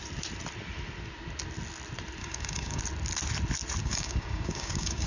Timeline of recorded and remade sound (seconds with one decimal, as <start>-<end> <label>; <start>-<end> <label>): 0.0-2.2 recorded; 2.2-2.8 remade; 2.8-3.8 recorded; 3.8-5.1 remade